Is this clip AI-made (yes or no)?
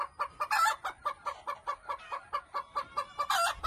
no